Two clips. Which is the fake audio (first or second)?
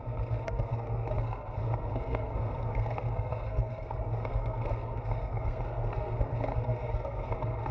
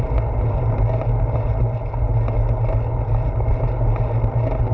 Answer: first